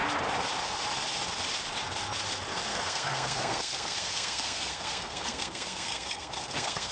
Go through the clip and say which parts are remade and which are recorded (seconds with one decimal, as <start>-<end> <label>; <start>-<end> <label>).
0.0-2.7 recorded; 2.7-6.9 remade